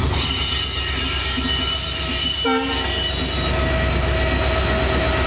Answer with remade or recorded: recorded